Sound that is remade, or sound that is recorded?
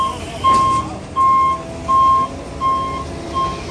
recorded